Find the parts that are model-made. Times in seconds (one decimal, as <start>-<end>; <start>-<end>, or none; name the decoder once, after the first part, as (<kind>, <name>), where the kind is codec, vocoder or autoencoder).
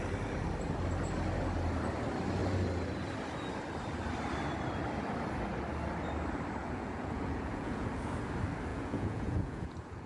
6.6-7.9 (vocoder, Vocos); 8.7-10.1